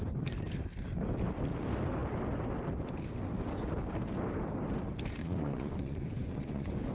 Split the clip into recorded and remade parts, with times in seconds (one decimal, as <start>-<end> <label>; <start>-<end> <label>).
0.0-5.2 recorded; 5.2-6.9 remade